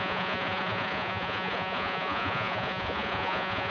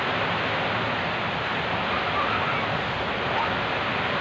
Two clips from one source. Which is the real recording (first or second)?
second